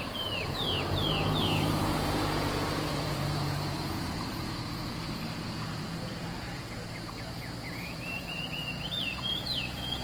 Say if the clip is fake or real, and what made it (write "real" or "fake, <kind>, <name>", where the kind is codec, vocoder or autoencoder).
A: fake, vocoder, Vocos